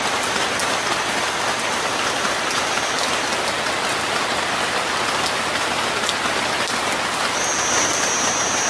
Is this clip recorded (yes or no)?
yes